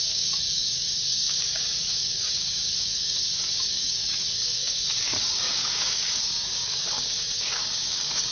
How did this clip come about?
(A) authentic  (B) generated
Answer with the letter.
B